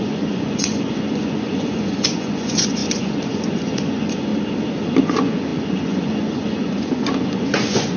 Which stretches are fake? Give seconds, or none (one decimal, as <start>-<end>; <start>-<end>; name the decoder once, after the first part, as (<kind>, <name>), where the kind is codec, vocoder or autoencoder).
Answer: 0.0-4.3 (vocoder, Vocos); 5.0-8.0